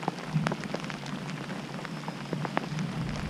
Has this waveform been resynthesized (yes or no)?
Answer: no